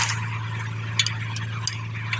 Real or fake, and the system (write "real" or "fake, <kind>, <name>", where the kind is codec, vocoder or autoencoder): real